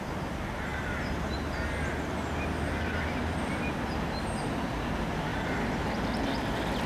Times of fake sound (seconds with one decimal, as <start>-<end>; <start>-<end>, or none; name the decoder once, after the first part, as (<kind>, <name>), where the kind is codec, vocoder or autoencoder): none